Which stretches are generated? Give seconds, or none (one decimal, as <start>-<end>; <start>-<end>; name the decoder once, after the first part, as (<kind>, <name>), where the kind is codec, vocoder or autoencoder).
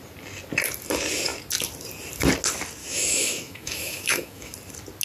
2.8-4.5 (autoencoder, DAC-VAE)